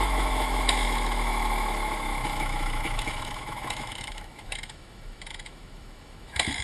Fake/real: fake